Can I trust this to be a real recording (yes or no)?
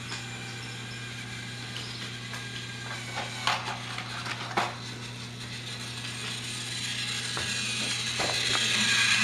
yes